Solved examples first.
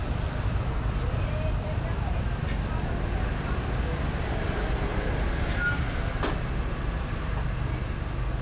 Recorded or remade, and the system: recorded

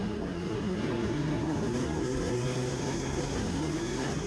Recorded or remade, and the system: remade, codec, SNAC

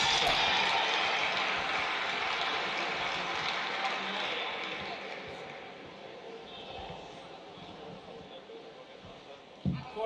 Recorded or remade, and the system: recorded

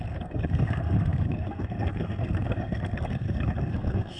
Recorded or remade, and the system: remade, codec, SNAC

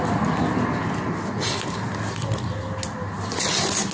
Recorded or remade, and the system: recorded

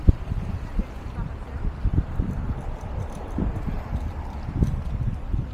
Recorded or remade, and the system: recorded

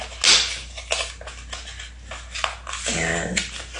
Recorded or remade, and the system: recorded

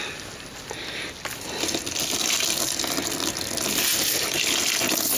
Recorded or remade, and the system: recorded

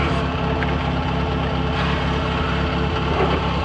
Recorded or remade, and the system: recorded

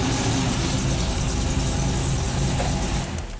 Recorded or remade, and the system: recorded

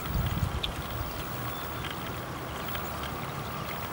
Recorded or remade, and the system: recorded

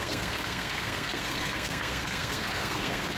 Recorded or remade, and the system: remade, codec, SNAC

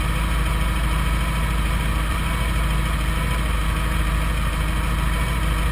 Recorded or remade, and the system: recorded